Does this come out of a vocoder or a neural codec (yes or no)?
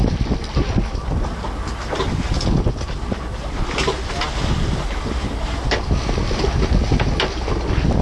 no